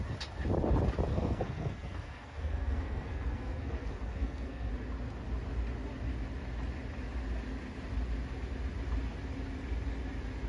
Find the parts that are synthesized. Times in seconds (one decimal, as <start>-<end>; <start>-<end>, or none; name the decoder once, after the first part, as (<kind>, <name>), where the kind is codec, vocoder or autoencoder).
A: 1.1-4.7 (codec, SNAC)